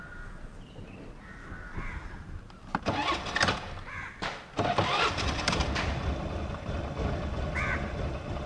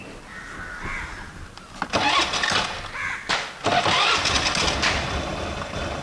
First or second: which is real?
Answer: second